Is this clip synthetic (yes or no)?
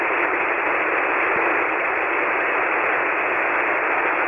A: no